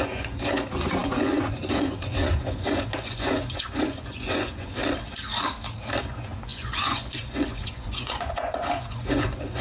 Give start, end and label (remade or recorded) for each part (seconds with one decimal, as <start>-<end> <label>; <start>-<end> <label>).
0.0-4.8 remade; 4.8-6.0 recorded; 6.0-9.6 remade